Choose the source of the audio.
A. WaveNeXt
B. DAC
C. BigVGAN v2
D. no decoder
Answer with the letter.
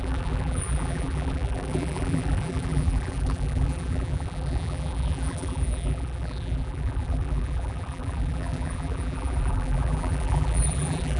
C